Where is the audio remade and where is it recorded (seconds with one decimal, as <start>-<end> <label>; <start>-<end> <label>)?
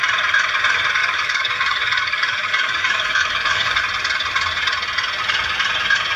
0.0-1.0 recorded; 1.0-3.8 remade; 3.8-6.2 recorded